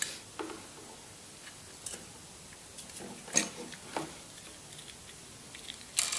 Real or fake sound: real